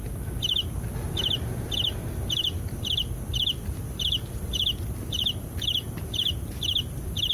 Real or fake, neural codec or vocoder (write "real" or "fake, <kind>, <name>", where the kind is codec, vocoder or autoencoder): real